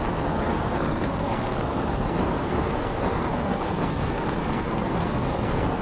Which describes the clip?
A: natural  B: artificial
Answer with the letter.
B